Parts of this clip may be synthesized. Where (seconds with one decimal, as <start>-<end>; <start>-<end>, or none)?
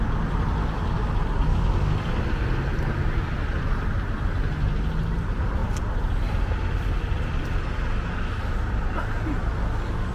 0.6-1.1; 1.5-2.1